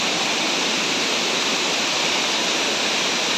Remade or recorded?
remade